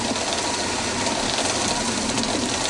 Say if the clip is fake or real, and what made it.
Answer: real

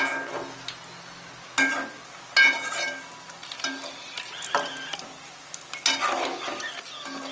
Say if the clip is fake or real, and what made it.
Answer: real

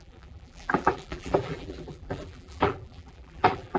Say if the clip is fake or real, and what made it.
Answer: fake, vocoder, BigVGAN v2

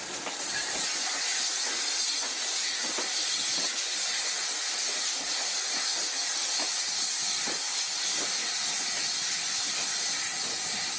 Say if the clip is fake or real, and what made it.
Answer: real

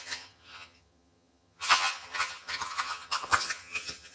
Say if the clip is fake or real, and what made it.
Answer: fake, vocoder, HiFi-GAN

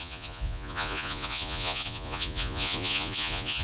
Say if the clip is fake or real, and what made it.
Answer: fake, vocoder, Vocos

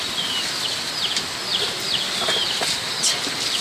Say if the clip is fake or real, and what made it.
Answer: real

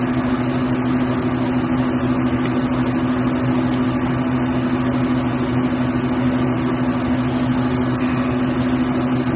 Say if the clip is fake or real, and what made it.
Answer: real